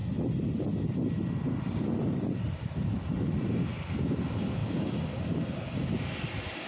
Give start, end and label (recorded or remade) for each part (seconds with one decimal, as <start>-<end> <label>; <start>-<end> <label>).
0.0-6.7 recorded